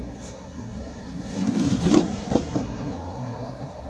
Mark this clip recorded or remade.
remade